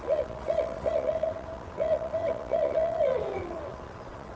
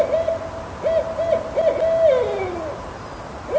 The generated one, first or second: first